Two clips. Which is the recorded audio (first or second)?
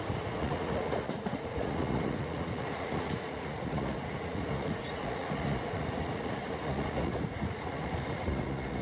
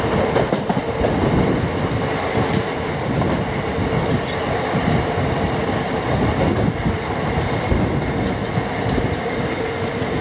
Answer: second